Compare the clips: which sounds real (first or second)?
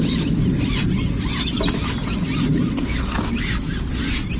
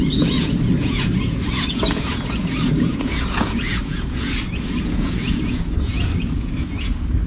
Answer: first